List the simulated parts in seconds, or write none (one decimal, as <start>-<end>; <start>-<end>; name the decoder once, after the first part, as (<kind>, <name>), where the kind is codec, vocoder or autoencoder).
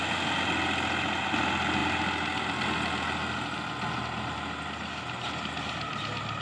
none